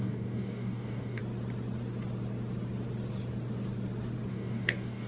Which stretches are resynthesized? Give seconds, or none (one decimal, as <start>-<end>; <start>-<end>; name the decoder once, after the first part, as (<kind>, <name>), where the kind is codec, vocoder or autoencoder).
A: 0.0-1.2 (codec, DAC); 4.3-5.1